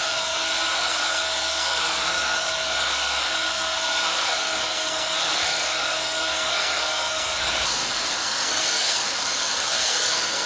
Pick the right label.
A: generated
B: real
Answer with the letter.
A